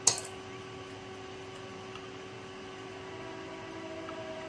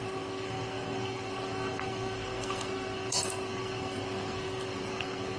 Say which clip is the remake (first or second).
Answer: second